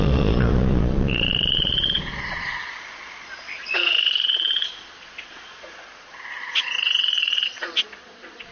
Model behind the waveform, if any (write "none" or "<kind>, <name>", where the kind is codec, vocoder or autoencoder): vocoder, Vocos